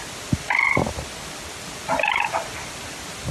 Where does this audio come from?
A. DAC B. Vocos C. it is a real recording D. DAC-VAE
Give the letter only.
C